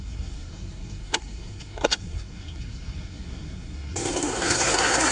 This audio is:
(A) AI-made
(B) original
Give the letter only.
A